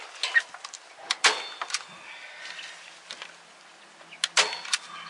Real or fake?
real